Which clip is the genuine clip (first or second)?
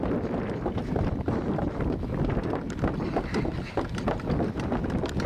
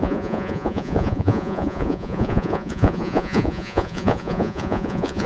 first